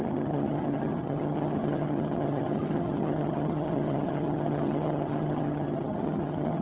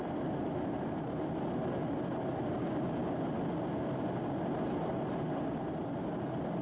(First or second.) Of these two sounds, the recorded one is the second